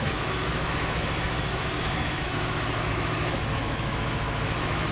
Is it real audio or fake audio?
fake